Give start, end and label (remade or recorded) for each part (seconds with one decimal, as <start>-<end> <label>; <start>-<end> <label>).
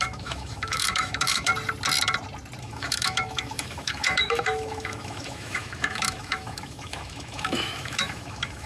0.0-1.5 remade; 1.5-2.6 recorded; 2.6-8.7 remade